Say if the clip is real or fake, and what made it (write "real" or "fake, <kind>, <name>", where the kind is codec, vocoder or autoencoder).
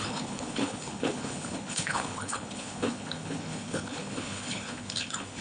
fake, codec, HILCodec